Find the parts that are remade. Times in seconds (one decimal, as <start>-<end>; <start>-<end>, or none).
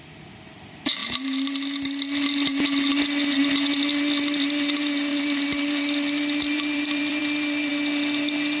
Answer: 5.1-7.2